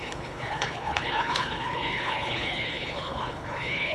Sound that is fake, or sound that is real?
fake